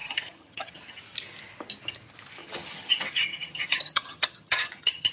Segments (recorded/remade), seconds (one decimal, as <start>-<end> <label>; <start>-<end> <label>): 0.0-1.0 remade; 1.0-2.4 recorded; 2.4-5.1 remade